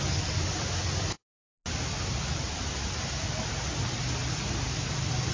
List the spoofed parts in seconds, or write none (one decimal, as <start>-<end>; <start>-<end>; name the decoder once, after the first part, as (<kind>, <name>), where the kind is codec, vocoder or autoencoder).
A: none